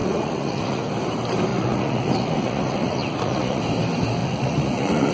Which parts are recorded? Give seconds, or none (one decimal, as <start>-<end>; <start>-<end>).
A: 0.8-1.5; 3.6-4.2